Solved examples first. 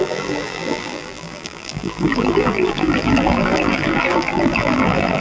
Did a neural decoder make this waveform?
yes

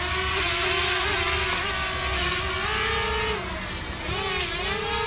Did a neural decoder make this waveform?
no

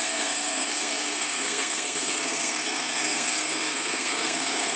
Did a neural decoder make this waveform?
yes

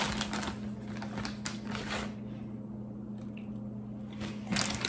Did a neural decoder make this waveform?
no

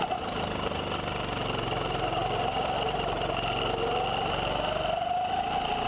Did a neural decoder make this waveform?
no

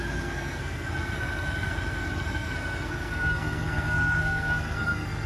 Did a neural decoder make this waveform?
yes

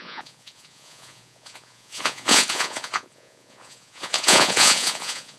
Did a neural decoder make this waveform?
yes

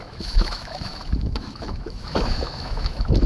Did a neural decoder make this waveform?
yes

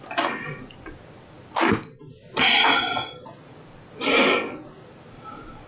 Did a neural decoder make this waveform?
no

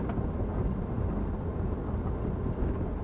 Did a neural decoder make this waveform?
no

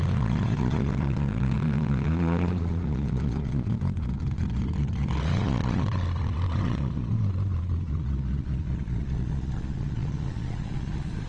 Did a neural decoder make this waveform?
yes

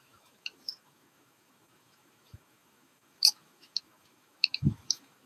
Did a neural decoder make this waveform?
yes